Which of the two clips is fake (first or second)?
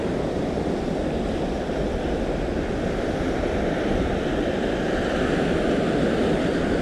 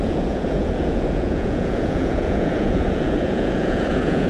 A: second